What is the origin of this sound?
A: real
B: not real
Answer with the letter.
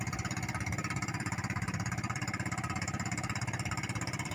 B